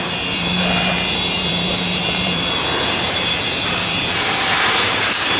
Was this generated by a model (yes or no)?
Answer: yes